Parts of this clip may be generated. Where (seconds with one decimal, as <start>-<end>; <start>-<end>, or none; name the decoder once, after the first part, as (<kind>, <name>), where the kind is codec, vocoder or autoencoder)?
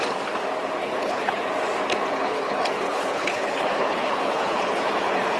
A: 0.8-1.4 (codec, HILCodec); 2.1-5.4